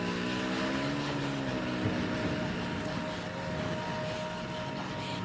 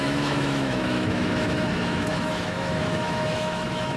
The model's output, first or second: second